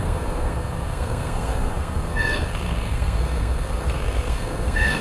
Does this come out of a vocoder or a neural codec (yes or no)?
yes